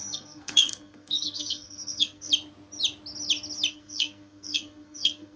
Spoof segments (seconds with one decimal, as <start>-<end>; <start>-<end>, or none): 0.0-2.3; 3.7-5.4